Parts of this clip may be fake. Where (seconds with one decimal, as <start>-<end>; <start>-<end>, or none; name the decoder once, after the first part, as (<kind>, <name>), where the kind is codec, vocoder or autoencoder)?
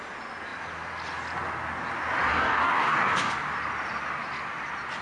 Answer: 2.3-3.3 (codec, DAC)